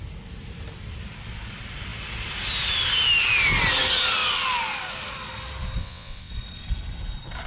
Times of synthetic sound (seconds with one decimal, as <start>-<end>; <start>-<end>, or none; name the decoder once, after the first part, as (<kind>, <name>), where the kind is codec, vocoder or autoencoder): 5.8-6.3 (vocoder, WaveNeXt)